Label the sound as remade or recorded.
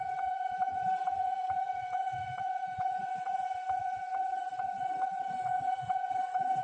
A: remade